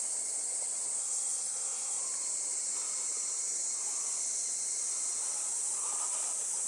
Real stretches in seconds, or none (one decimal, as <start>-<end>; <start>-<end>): 0.0-1.0; 2.0-6.7